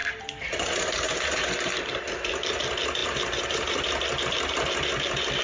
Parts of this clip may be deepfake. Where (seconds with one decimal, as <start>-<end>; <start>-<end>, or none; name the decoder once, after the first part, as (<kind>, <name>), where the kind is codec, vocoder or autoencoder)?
none